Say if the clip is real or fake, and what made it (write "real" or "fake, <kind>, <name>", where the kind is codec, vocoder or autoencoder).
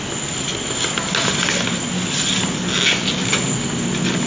real